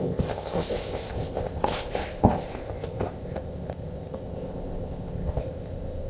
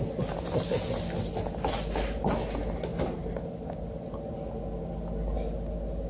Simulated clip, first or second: first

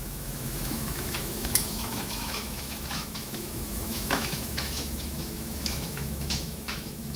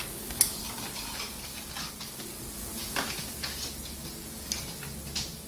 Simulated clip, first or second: first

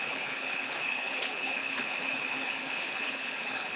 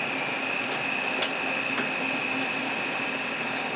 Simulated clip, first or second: first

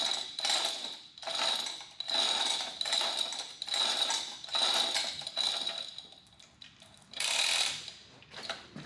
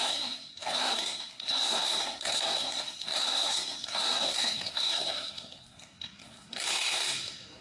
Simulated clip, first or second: second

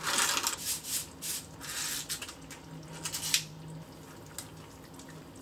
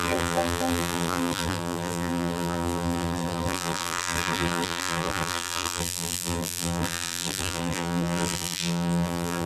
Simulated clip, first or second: second